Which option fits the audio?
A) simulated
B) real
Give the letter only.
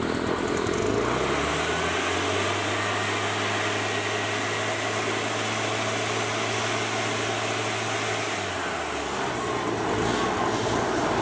B